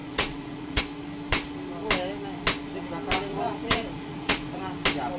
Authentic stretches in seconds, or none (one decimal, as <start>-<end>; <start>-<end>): 0.8-3.3; 4.6-5.2